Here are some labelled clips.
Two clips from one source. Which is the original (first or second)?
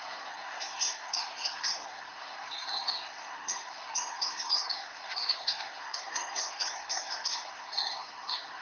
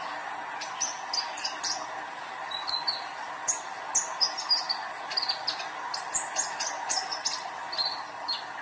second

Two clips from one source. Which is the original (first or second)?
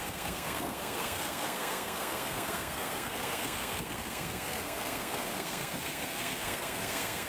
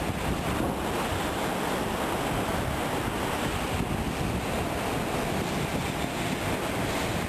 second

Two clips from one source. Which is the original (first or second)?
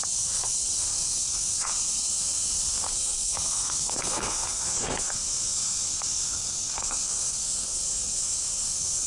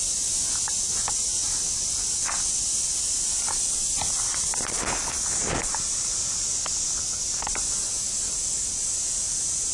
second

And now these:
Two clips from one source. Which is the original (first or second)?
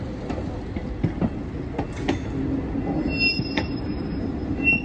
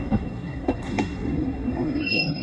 first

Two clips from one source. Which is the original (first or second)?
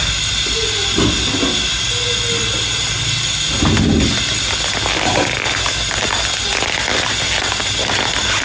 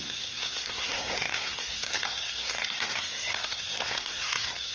first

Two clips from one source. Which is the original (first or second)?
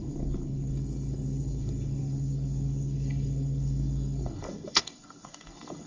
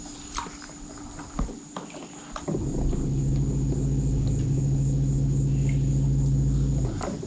second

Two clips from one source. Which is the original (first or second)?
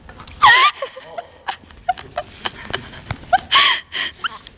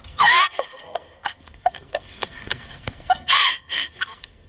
first